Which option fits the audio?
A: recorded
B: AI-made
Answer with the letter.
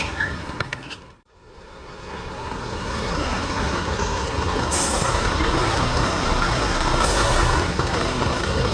B